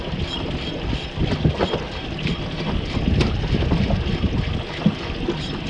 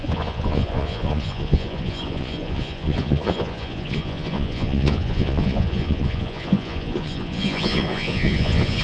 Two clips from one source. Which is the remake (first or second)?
second